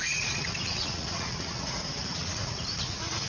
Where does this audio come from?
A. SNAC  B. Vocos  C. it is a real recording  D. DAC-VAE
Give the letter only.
B